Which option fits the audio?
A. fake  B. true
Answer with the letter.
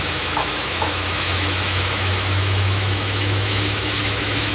A